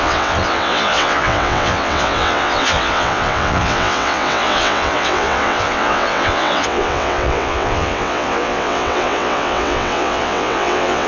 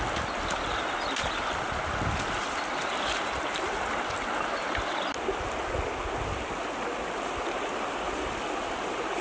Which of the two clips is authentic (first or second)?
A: second